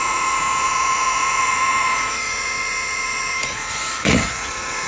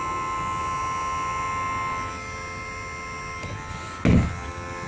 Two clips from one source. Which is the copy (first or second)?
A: first